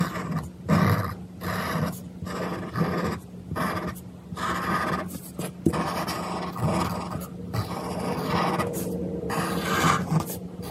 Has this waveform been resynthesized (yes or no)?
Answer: no